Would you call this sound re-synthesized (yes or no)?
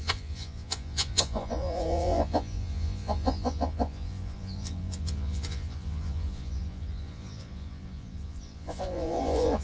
yes